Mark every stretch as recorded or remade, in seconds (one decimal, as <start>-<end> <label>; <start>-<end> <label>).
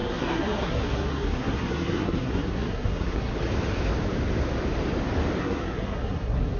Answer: 0.0-3.3 remade; 3.3-5.4 recorded; 5.4-6.6 remade